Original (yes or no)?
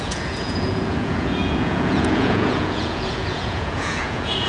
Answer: no